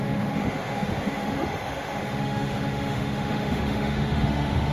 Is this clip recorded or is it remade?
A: remade